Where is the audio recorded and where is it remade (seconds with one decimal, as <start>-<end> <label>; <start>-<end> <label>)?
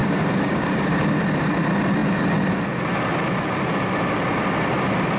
0.0-1.2 remade; 1.2-5.2 recorded